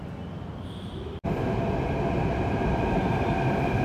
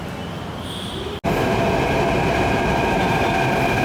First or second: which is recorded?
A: second